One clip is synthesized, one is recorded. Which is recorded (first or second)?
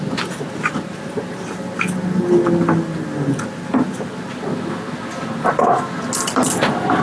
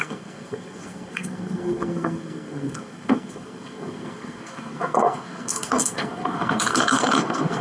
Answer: first